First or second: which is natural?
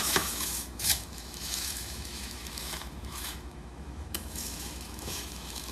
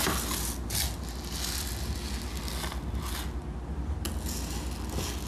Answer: second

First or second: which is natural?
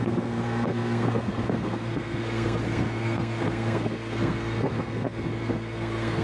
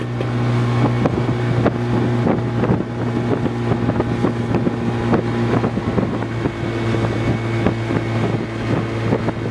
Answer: second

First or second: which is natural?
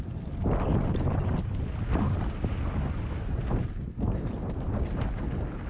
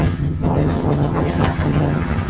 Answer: first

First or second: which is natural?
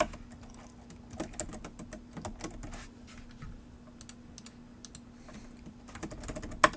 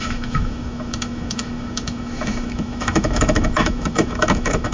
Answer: first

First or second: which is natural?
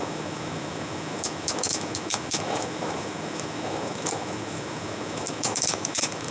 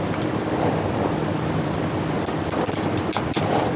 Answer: second